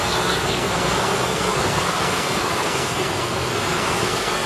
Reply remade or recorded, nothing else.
remade